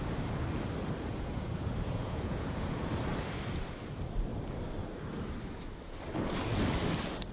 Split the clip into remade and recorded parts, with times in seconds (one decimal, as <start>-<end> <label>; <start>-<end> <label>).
0.0-1.1 recorded; 1.1-2.8 remade; 2.8-7.3 recorded